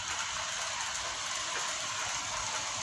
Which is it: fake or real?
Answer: real